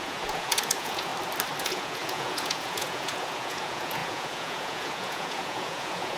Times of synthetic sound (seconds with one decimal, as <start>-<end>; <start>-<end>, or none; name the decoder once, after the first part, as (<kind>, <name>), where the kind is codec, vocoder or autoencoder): 0.0-1.1 (vocoder, Vocos); 1.6-6.2